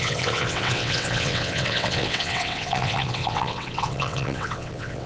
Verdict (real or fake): fake